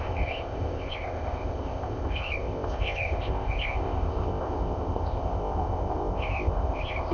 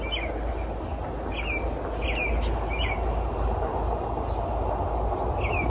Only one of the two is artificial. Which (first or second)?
first